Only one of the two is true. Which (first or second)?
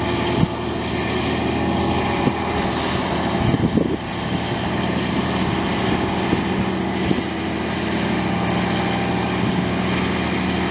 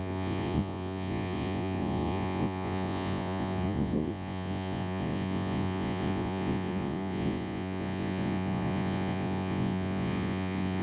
first